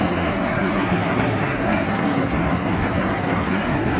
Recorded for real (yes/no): no